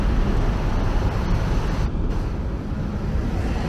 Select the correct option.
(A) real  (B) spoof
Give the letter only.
A